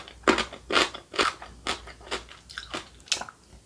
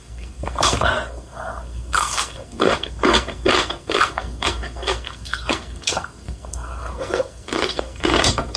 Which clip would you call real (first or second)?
first